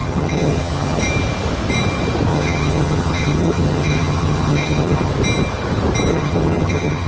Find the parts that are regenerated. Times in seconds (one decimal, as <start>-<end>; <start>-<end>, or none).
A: 0.0-1.0; 2.3-5.1; 6.1-7.1